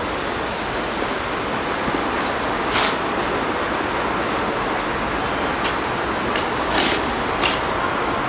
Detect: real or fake real